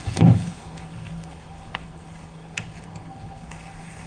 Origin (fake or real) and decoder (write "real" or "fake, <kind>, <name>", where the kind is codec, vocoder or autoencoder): fake, codec, SNAC